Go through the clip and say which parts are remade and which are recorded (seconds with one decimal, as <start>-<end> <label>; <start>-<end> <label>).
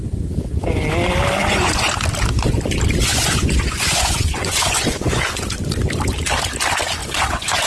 0.0-1.4 recorded; 1.4-2.0 remade; 2.0-3.1 recorded; 3.1-5.2 remade; 5.2-7.0 recorded; 7.0-7.7 remade